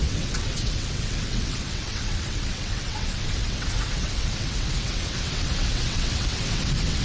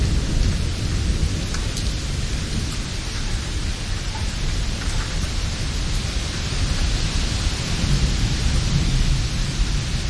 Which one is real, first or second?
second